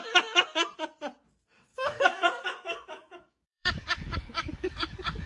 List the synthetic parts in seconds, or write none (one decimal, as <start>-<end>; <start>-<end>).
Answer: 1.7-5.3